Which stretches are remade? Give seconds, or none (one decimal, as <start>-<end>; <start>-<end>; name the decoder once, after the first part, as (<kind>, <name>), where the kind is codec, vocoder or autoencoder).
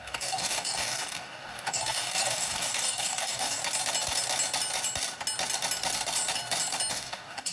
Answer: 0.0-3.6 (codec, DAC); 6.9-7.5